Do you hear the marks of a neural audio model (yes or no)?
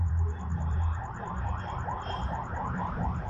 yes